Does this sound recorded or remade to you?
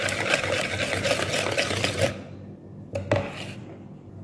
recorded